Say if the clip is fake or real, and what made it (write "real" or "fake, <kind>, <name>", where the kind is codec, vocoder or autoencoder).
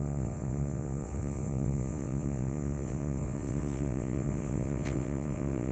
fake, vocoder, WaveNeXt